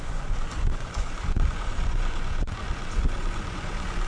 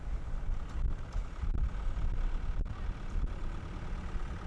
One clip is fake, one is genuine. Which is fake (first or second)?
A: first